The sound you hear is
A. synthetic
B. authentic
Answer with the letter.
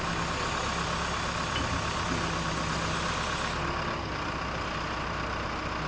B